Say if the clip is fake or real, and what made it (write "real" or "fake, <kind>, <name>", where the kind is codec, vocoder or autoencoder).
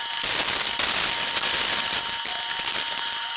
real